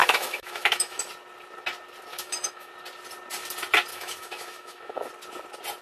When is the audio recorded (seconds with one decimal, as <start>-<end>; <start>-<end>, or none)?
1.0-2.1; 2.7-3.9; 5.1-5.8